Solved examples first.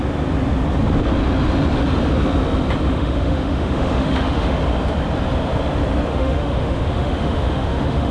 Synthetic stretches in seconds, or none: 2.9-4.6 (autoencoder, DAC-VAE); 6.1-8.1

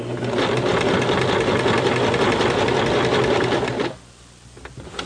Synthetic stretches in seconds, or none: none

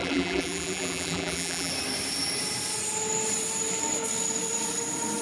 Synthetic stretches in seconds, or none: 0.0-1.7 (vocoder, BigVGAN v2)

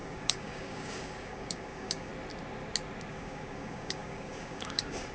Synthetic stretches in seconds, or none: 0.0-2.1 (codec, DAC); 3.1-5.1

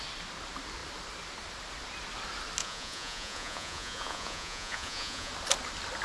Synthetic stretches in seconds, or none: 2.6-5.3 (vocoder, Vocos)